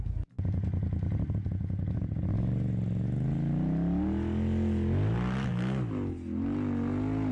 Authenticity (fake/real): real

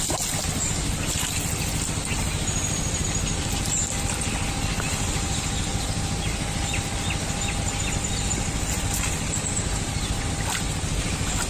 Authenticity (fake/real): real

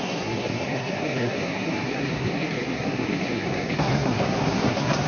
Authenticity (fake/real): fake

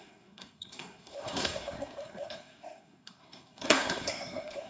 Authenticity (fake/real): fake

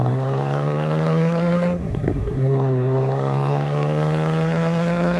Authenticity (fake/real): fake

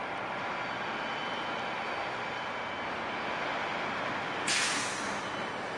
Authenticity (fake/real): real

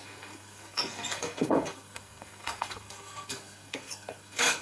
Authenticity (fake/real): fake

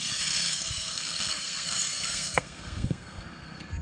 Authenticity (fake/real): fake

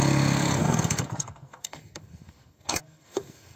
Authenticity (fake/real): fake